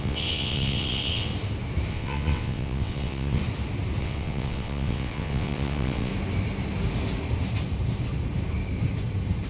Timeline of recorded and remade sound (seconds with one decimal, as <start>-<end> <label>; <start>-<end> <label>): 0.0-1.3 remade; 1.3-1.9 recorded; 1.9-3.4 remade; 3.4-4.0 recorded; 4.0-6.1 remade; 6.1-9.5 recorded